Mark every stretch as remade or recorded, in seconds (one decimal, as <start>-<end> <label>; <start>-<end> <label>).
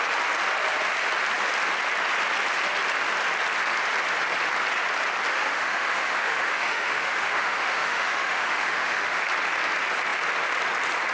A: 0.0-5.3 recorded; 5.3-9.2 remade; 9.2-11.1 recorded